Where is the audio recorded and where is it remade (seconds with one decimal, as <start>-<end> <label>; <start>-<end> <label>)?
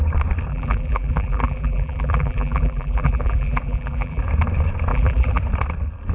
0.0-0.5 recorded; 0.5-4.2 remade; 4.2-4.9 recorded; 4.9-5.4 remade; 5.4-6.1 recorded